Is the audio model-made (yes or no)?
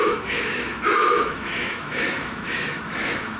yes